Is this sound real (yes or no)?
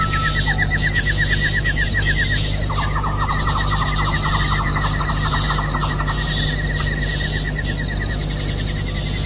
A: yes